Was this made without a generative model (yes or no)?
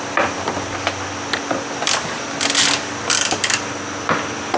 yes